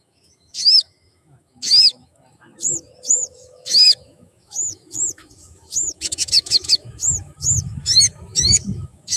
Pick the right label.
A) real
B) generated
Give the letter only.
B